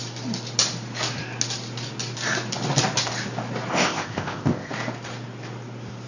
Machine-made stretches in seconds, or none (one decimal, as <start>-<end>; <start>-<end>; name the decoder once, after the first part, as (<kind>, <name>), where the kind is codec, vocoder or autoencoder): 3.7-4.7 (codec, ZipCodec)